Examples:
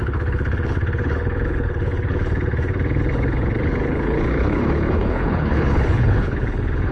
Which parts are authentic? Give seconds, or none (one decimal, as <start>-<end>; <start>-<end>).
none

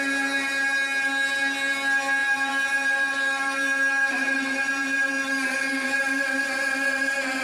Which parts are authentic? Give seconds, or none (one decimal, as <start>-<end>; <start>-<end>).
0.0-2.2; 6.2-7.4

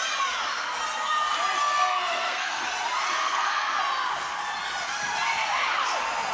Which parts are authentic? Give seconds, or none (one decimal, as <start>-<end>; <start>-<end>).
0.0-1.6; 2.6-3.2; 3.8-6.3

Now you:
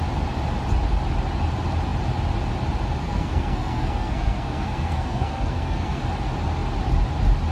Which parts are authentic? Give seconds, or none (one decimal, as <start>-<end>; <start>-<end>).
0.0-3.0; 6.0-7.5

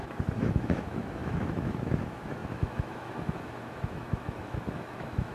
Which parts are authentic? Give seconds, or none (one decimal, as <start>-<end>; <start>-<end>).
none